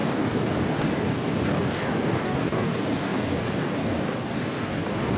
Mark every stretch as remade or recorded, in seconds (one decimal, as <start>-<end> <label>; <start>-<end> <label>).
0.0-5.2 remade